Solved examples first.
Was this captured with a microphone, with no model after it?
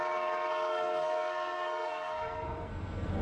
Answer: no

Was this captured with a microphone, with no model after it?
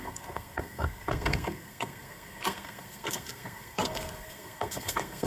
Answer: no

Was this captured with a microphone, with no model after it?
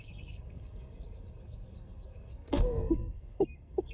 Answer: no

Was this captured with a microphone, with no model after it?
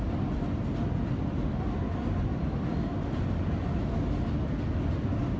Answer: yes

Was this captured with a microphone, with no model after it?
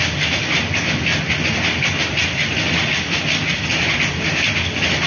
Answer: yes